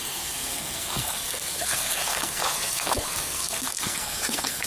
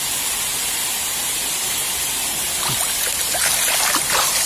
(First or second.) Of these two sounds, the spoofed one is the first